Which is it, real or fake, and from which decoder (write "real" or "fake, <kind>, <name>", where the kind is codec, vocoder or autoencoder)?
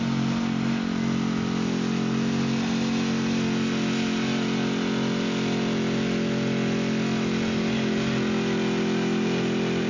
real